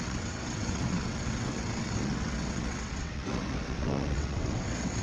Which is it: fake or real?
fake